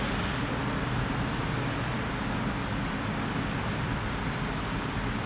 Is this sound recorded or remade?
recorded